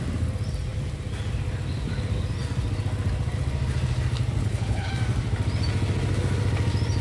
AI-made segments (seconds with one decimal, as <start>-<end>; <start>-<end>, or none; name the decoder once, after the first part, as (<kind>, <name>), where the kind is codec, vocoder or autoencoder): 4.4-4.9 (codec, HILCodec)